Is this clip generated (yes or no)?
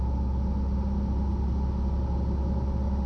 no